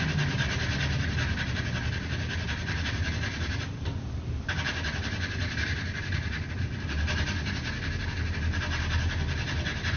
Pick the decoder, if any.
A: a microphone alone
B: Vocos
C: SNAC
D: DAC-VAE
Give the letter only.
A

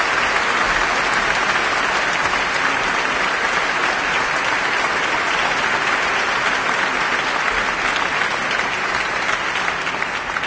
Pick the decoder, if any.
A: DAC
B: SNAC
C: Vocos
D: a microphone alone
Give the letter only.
D